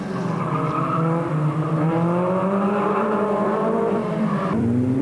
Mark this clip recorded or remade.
remade